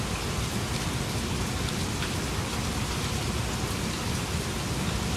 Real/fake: real